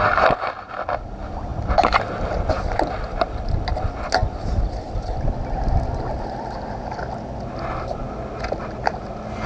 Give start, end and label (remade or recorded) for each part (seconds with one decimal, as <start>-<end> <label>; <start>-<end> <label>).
0.0-9.5 recorded